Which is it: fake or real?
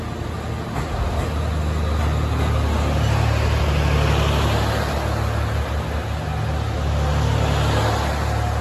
real